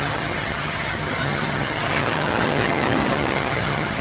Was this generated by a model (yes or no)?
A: yes